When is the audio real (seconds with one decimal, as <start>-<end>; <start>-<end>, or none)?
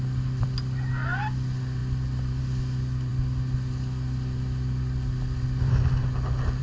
0.0-6.6